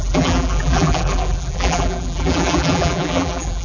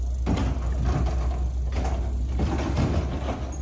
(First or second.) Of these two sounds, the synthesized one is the first